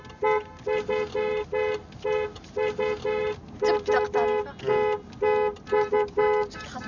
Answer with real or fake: real